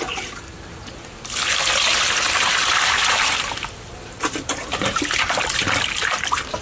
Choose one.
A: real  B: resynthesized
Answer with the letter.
A